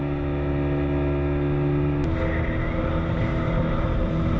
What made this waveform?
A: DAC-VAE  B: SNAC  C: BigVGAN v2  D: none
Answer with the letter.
D